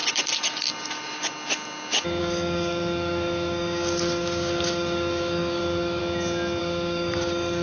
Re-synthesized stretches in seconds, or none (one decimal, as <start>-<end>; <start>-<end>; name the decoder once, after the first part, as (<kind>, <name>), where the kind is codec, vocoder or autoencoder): 2.2-6.0 (codec, DAC); 6.6-7.6

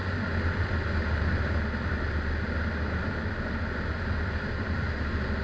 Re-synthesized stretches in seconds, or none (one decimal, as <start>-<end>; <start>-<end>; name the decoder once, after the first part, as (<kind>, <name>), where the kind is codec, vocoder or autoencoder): none